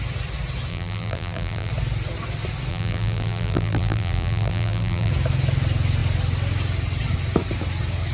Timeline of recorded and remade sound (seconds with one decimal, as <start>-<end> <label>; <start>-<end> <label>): 0.0-0.7 recorded; 0.7-1.7 remade; 1.7-2.7 recorded; 2.7-5.1 remade; 5.1-8.1 recorded